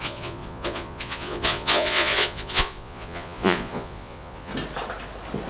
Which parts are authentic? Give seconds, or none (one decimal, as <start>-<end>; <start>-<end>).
4.5-5.5